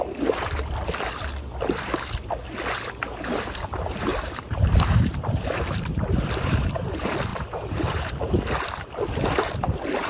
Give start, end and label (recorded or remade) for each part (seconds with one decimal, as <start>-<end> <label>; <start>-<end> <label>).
0.0-4.1 recorded; 4.1-6.0 remade; 6.0-7.3 recorded; 7.3-8.1 remade; 8.1-10.1 recorded

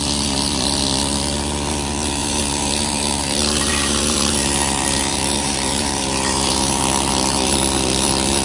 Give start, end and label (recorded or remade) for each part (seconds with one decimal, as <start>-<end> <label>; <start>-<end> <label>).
0.0-2.2 recorded; 2.2-6.8 remade; 6.8-8.4 recorded

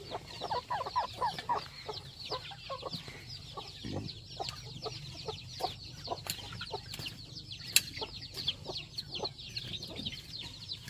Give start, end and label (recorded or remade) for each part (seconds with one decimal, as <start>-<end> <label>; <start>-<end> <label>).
0.0-10.9 recorded

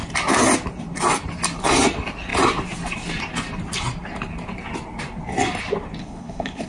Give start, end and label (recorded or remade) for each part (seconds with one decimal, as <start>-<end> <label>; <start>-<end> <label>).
0.0-6.0 recorded; 6.0-6.7 remade

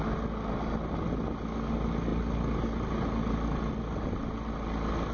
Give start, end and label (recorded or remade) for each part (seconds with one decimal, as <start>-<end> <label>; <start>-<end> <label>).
0.0-5.1 recorded

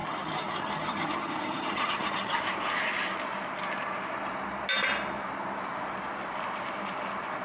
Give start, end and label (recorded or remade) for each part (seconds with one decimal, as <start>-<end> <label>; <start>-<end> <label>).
0.0-2.4 remade; 2.4-7.4 recorded